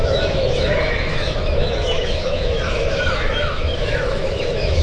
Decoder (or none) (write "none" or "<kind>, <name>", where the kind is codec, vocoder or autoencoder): autoencoder, DAC-VAE